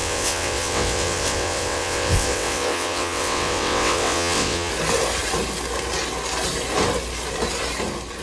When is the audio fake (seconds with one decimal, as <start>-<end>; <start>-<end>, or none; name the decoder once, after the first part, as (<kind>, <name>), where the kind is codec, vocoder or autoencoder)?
0.0-4.7 (vocoder, WaveNeXt)